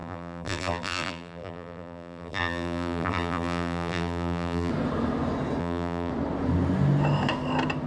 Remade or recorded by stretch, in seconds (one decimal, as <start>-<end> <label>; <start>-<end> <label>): 0.0-4.7 remade; 4.7-5.6 recorded; 5.6-6.1 remade; 6.1-7.9 recorded